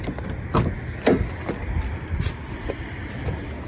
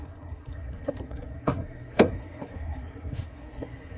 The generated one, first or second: second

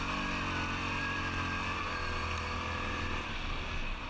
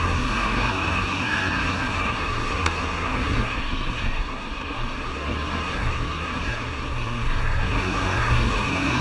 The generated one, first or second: second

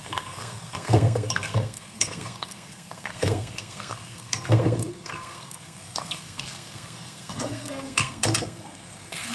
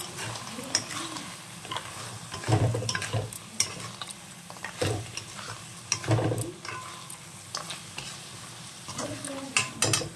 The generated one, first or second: first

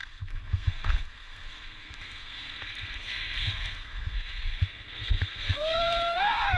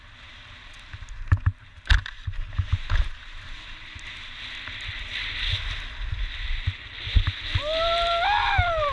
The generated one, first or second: first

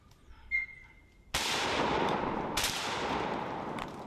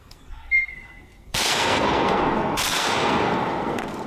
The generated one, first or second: second